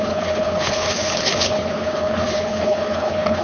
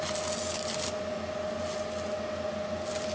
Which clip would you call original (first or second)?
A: second